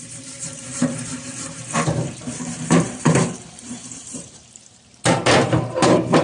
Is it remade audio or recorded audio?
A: remade